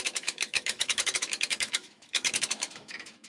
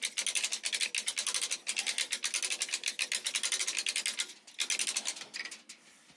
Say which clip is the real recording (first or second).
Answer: second